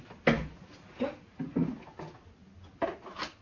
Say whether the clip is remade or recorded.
recorded